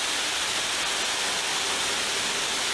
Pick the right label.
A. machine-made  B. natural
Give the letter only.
B